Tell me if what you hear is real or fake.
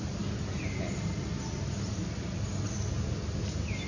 real